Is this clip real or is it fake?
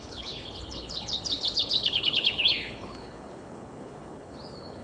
fake